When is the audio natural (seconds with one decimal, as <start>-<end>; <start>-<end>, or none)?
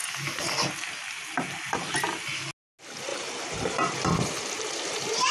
0.0-3.1